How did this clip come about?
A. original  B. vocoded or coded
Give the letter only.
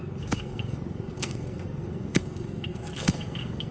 B